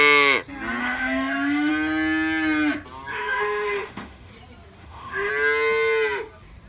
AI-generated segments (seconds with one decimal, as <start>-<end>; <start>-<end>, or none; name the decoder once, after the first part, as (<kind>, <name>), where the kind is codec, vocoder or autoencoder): 0.8-1.7 (autoencoder, DAC-VAE); 3.1-4.3; 4.8-5.3